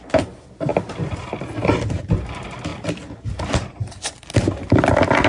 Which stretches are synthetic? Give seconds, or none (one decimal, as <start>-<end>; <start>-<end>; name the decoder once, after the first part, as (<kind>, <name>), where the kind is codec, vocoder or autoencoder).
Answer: none